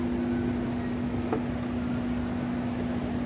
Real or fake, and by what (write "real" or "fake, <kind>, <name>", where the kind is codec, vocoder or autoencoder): real